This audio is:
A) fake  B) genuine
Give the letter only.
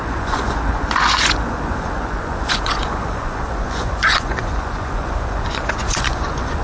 A